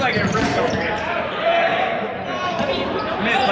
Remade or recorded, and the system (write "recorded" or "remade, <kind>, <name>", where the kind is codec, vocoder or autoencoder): recorded